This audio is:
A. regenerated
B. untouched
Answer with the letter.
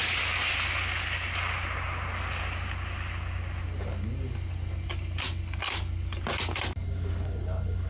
B